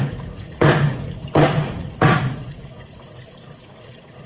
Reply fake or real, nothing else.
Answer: fake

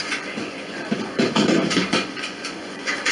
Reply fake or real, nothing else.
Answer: fake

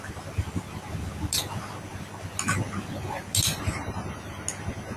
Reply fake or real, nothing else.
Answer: real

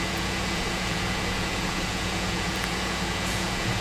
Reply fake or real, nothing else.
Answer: fake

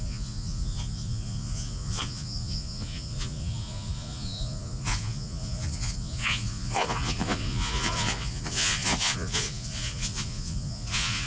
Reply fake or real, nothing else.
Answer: fake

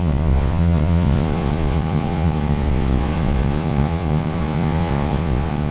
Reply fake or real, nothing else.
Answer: fake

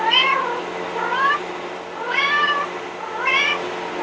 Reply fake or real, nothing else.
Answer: real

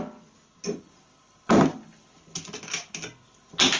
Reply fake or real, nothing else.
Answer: real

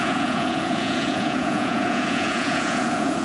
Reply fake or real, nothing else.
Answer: fake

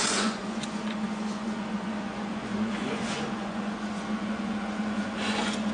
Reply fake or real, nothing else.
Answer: fake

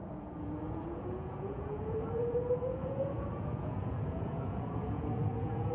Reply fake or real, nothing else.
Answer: fake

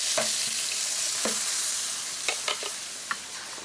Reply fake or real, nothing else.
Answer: real